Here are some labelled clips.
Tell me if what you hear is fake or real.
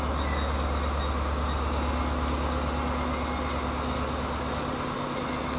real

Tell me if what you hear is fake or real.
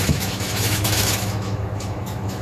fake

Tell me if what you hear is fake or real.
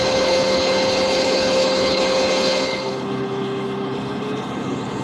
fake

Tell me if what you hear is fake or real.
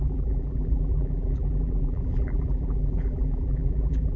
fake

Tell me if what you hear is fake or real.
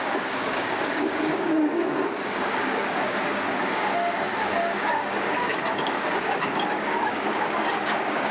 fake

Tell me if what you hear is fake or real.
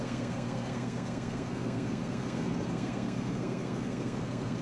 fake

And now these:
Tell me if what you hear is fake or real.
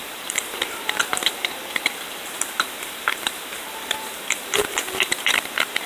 fake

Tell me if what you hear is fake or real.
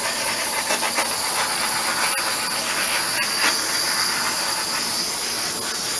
real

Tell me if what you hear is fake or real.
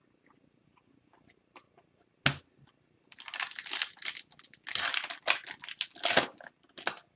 real